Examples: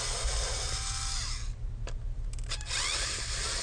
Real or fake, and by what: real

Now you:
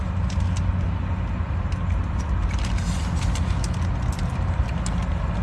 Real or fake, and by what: real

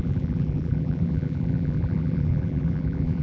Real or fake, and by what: fake, vocoder, BigVGAN v2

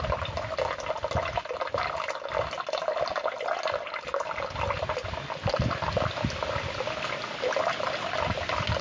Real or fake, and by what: real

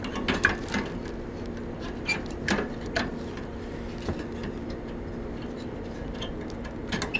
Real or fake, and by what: real